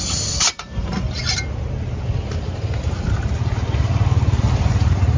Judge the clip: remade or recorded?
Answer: recorded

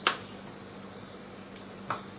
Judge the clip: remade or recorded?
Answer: recorded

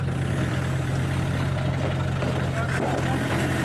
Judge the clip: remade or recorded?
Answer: recorded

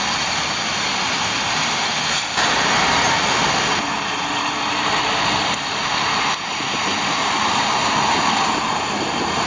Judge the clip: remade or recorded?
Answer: recorded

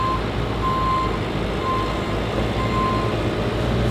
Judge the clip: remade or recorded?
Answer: recorded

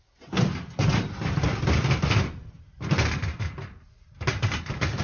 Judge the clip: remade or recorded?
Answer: recorded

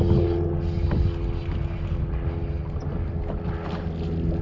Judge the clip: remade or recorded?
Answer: recorded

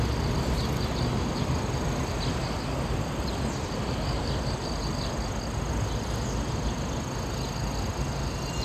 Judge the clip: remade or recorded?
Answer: recorded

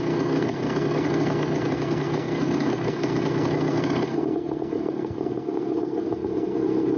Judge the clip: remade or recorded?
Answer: remade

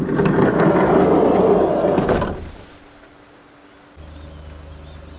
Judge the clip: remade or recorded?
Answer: recorded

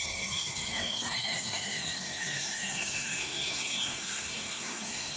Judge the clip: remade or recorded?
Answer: remade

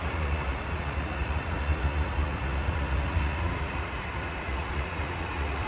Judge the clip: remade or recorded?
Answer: remade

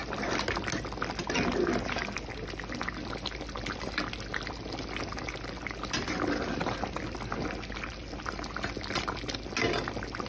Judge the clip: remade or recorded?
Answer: recorded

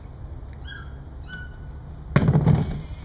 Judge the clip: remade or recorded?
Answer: recorded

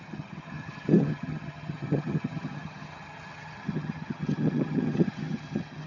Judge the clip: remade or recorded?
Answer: remade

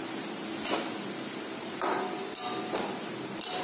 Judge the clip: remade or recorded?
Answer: recorded